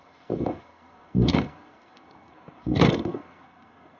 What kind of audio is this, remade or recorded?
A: remade